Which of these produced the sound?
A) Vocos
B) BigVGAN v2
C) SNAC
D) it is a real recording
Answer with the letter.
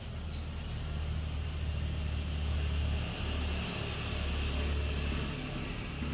D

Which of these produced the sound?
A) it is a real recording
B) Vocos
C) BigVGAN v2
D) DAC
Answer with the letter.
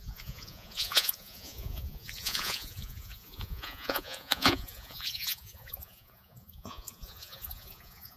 B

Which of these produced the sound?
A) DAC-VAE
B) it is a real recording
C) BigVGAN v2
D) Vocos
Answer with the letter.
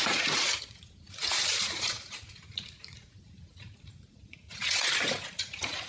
D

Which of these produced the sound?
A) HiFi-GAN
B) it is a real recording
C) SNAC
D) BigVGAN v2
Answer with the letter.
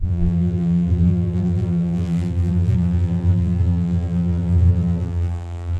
D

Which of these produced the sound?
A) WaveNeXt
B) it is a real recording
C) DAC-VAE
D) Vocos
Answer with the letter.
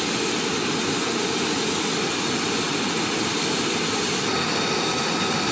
B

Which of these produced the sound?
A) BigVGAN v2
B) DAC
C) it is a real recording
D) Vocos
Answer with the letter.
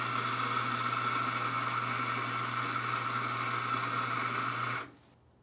C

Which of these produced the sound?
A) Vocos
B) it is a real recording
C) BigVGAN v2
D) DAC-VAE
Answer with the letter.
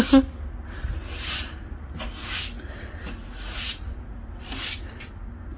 B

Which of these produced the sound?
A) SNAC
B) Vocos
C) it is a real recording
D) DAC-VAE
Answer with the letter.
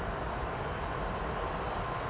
C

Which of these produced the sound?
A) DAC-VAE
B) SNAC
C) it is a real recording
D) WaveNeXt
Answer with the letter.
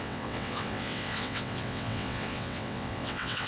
D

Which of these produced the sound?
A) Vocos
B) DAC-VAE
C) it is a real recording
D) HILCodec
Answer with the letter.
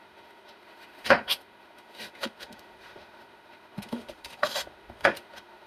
B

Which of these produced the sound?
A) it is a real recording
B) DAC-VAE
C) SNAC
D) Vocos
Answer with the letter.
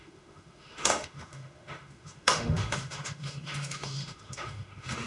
B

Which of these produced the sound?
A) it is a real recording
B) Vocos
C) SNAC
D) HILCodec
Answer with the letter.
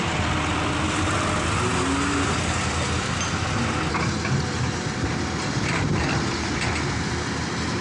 A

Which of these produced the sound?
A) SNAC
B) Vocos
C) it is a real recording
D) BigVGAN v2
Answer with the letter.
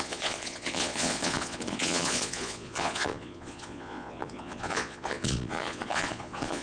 B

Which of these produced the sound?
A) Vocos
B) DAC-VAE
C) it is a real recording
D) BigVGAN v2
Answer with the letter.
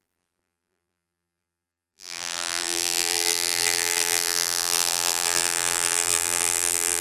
D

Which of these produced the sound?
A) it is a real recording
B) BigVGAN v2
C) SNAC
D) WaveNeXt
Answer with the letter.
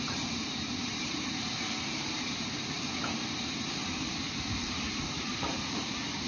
B